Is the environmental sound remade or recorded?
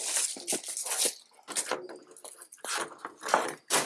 recorded